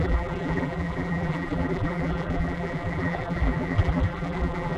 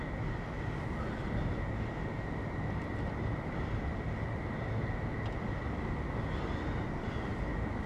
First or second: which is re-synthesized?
first